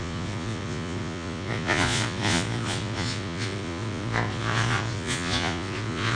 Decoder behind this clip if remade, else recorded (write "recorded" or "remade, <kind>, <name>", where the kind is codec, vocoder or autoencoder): remade, vocoder, Vocos